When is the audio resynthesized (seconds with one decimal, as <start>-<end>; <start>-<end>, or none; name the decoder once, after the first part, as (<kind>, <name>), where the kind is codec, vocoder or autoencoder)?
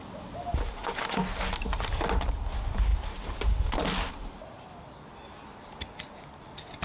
none